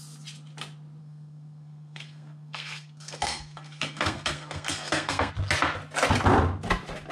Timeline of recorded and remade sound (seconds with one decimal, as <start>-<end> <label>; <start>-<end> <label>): 0.0-1.0 recorded; 1.0-5.3 remade; 5.3-7.1 recorded